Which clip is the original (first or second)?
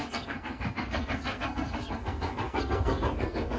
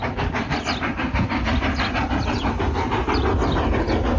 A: second